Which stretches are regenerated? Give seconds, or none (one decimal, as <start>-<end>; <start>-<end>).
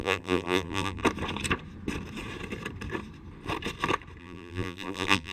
0.0-1.0; 4.2-5.3